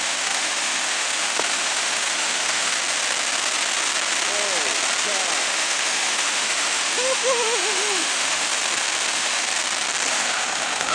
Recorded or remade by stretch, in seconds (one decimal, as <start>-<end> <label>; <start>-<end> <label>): 0.0-2.8 remade; 2.8-5.4 recorded; 5.4-8.5 remade; 8.5-9.1 recorded; 9.1-9.5 remade; 9.5-10.1 recorded; 10.1-10.9 remade